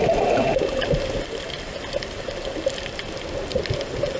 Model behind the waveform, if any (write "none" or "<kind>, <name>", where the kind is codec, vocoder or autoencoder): none